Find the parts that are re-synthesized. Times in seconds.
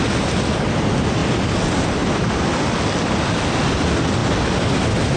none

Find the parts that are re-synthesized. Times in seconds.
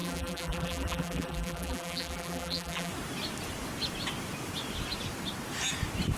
0.0-2.9 (vocoder, BigVGAN v2)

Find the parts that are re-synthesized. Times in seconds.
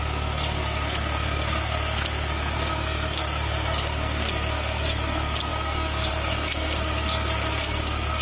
0.0-8.2 (codec, SNAC)